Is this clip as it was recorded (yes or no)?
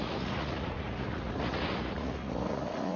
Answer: no